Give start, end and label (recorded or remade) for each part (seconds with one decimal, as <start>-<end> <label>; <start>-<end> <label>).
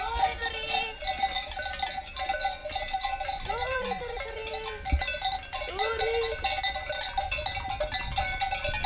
0.0-1.0 recorded; 1.0-2.0 remade; 2.0-2.6 recorded; 2.6-6.6 remade; 6.6-8.9 recorded